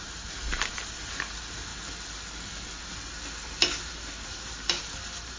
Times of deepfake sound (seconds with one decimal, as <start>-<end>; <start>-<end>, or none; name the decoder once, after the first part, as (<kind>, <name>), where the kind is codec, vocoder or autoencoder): 0.0-1.7 (vocoder, BigVGAN v2); 3.8-5.4